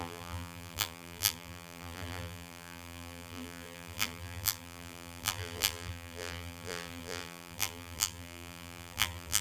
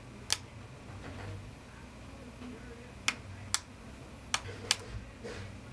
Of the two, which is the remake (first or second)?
first